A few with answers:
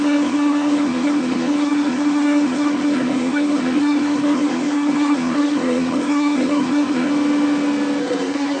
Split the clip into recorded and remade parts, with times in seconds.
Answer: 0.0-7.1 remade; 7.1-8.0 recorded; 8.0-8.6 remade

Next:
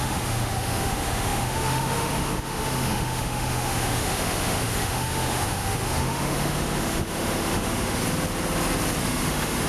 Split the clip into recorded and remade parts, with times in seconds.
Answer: 0.0-8.0 remade; 8.0-9.0 recorded; 9.0-9.7 remade